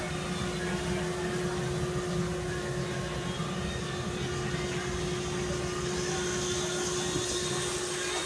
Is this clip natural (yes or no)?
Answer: yes